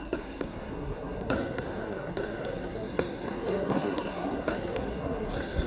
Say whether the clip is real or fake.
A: fake